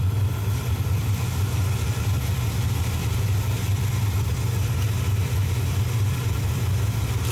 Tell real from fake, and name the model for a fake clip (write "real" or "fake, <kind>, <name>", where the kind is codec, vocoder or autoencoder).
fake, vocoder, BigVGAN v2